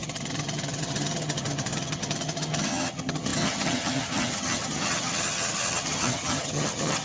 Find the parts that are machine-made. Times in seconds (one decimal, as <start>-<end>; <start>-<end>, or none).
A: 0.0-7.0